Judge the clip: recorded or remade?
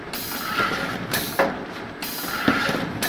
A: recorded